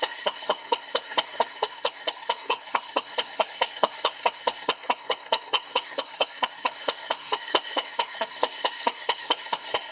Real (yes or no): no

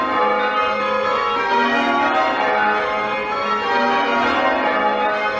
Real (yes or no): yes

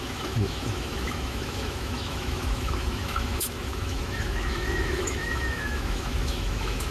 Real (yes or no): no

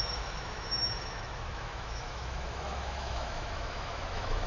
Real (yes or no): no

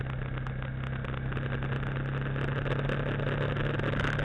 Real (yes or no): yes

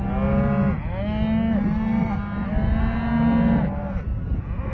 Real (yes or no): yes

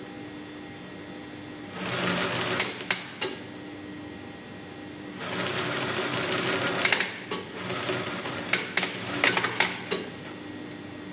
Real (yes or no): yes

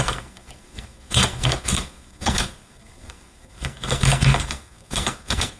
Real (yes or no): no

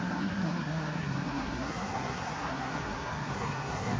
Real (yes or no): no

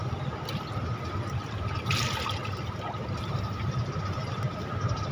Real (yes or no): yes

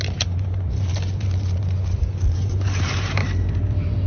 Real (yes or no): no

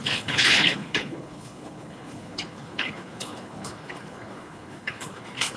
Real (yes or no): no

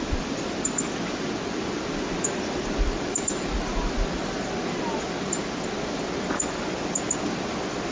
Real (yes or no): yes